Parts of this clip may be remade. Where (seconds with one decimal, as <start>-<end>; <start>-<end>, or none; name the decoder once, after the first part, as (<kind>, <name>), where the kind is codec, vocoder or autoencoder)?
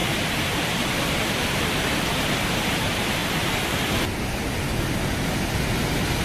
0.0-2.8 (vocoder, BigVGAN v2)